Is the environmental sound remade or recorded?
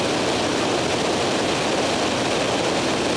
recorded